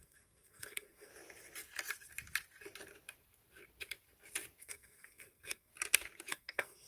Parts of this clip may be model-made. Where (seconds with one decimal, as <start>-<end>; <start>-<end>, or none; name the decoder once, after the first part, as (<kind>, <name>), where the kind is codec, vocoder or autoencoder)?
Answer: 0.0-1.1 (codec, SNAC); 4.6-5.7; 6.3-6.9